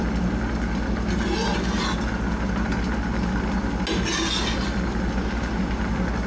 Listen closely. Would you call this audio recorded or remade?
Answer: recorded